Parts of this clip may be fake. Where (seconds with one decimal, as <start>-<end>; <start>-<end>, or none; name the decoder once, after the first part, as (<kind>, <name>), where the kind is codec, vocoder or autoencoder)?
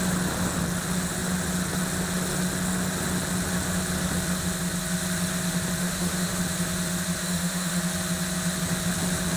5.8-6.4 (autoencoder, DAC-VAE); 7.2-7.8